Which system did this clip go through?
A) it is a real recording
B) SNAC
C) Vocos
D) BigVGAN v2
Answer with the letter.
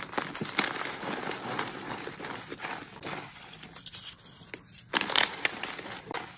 A